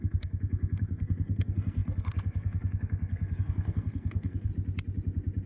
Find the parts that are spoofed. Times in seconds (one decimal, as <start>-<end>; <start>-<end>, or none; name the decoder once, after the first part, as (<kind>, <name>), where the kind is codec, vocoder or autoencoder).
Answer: 0.0-4.5 (codec, SNAC)